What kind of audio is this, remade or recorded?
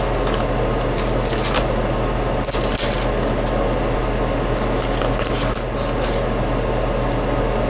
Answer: recorded